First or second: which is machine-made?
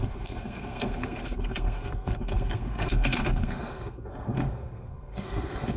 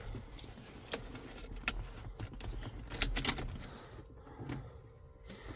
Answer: first